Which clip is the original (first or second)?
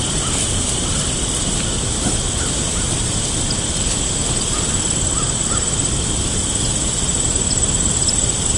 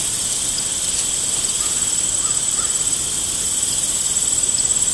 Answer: second